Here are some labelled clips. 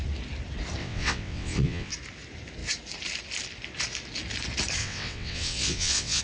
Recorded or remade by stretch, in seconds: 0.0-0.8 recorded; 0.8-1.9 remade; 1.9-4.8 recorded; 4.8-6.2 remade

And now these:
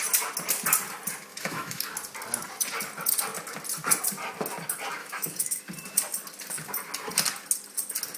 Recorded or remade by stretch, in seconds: 0.0-1.3 recorded; 1.3-1.8 remade; 1.8-5.0 recorded; 5.0-5.6 remade; 5.6-8.2 recorded

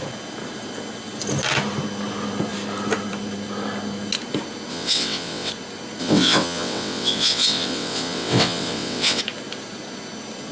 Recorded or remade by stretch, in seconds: 0.0-4.7 recorded; 4.7-5.5 remade; 5.5-6.0 recorded; 6.0-9.2 remade; 9.2-10.5 recorded

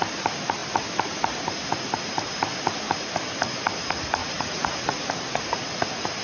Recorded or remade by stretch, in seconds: 0.0-4.2 recorded; 4.2-5.1 remade; 5.1-6.2 recorded